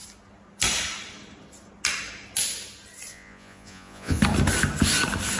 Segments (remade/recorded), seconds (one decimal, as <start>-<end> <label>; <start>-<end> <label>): 0.0-3.1 recorded; 3.1-4.2 remade; 4.2-5.4 recorded